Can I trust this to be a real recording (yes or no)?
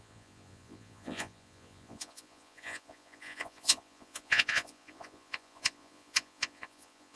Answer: no